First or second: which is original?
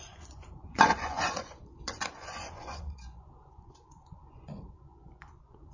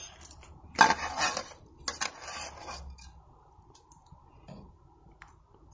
second